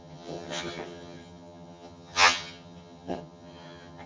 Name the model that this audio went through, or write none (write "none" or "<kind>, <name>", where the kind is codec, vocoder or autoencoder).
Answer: vocoder, HiFi-GAN